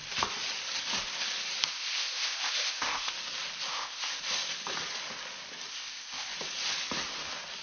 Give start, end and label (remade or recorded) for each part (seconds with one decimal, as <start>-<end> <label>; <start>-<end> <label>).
0.0-1.7 recorded; 1.7-3.1 remade; 3.1-3.7 recorded; 3.7-4.2 remade; 4.2-5.7 recorded; 5.7-6.3 remade; 6.3-7.6 recorded

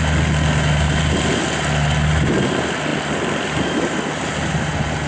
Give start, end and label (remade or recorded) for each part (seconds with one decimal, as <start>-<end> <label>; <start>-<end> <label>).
0.0-5.1 recorded

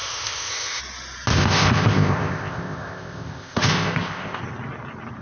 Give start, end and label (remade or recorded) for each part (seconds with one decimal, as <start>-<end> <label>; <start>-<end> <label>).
0.0-0.8 remade; 0.8-1.3 recorded; 1.3-4.4 remade; 4.4-5.2 recorded

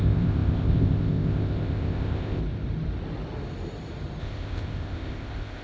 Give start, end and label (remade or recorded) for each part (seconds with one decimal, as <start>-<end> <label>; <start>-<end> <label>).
0.0-2.4 remade; 2.4-4.2 recorded; 4.2-5.6 remade

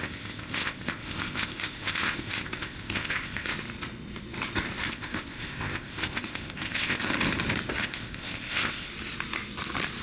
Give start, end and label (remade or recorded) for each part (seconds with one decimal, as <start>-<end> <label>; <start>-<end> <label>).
0.0-3.5 remade; 3.5-4.9 recorded; 4.9-7.1 remade; 7.1-7.8 recorded; 7.8-8.9 remade; 8.9-10.0 recorded